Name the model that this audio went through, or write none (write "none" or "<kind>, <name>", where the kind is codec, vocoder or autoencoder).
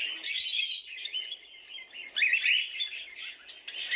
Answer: none